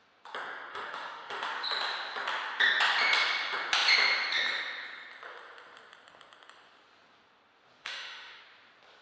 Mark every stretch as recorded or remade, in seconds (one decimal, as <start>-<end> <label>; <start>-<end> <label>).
0.0-0.7 recorded; 0.7-1.5 remade; 1.5-7.8 recorded; 7.8-8.4 remade; 8.4-9.0 recorded